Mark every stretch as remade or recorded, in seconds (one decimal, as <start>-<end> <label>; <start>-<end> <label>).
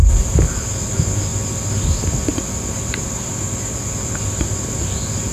0.0-5.3 recorded